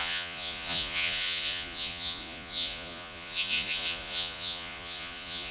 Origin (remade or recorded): remade